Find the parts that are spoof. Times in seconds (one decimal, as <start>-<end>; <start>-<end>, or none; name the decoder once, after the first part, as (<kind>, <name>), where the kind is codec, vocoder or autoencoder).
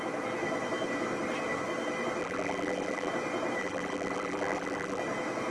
2.2-3.1 (vocoder, BigVGAN v2); 3.6-5.0